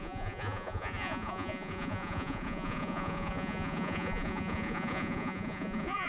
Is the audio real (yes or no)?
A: no